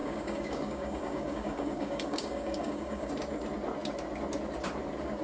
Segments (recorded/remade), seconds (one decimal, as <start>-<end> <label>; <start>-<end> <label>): 0.0-3.1 remade; 3.1-5.2 recorded